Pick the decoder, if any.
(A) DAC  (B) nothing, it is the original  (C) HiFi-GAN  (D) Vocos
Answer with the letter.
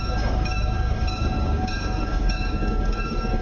A